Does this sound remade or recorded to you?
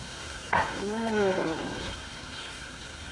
remade